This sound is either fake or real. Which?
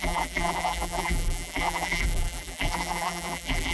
fake